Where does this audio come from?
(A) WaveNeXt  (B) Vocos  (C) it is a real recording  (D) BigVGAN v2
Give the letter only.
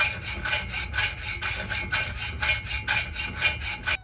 C